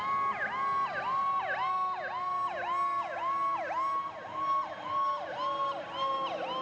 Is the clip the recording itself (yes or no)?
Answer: yes